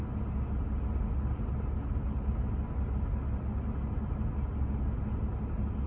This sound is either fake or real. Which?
real